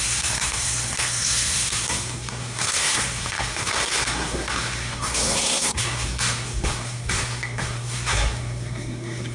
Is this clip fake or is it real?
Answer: fake